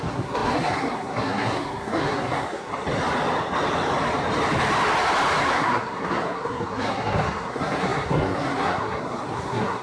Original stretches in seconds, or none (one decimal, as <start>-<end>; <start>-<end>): 2.7-5.5